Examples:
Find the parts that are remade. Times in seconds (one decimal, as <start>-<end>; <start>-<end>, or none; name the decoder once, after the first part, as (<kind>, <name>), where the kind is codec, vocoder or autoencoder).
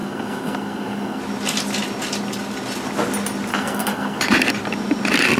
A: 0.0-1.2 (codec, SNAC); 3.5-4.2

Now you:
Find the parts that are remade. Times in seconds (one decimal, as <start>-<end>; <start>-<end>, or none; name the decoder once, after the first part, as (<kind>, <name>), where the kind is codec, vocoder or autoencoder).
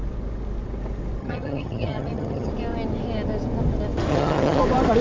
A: 1.2-2.5 (vocoder, HiFi-GAN); 4.1-4.6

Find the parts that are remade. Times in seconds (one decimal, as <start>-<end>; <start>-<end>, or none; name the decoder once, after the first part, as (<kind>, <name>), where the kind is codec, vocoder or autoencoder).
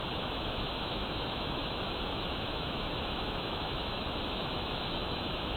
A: 0.0-5.6 (autoencoder, DAC-VAE)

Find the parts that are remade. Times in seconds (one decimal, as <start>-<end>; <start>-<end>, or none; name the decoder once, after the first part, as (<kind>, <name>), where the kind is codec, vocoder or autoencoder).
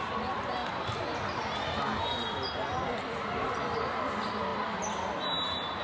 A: none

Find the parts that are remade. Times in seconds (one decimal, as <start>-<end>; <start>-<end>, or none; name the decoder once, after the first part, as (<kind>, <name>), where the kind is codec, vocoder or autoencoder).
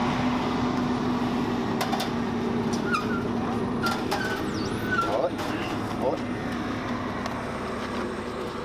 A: none